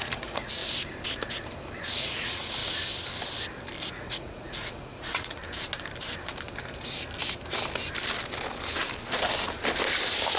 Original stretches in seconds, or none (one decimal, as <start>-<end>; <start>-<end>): 0.6-1.9; 2.6-3.9; 5.4-10.4